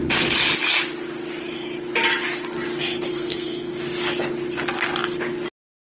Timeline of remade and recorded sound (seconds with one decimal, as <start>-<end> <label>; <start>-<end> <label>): 0.0-3.1 recorded; 3.1-3.7 remade; 3.7-5.9 recorded